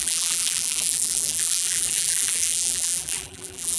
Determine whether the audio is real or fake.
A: fake